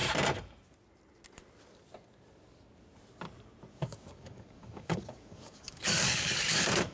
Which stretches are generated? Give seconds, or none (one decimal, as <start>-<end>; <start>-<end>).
3.7-6.9